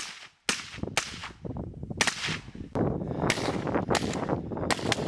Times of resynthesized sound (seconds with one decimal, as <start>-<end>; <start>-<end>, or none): none